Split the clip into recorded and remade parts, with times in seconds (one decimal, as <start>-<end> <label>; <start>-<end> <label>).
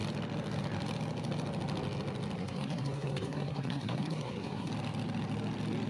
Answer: 0.0-2.4 recorded; 2.4-4.7 remade; 4.7-5.9 recorded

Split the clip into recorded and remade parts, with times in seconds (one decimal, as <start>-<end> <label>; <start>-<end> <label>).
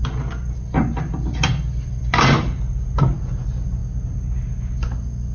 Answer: 0.0-5.3 recorded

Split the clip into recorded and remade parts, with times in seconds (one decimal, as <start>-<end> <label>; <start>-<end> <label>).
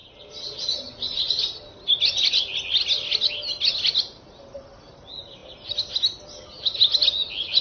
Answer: 0.0-7.6 recorded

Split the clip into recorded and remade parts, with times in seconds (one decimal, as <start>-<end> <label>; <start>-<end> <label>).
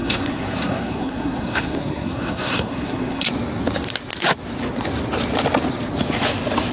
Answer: 0.0-3.3 remade; 3.3-6.7 recorded